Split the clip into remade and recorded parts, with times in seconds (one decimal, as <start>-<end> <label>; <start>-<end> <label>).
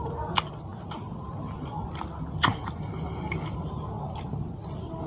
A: 0.0-5.1 recorded